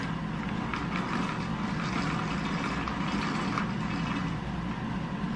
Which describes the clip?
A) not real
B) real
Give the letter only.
B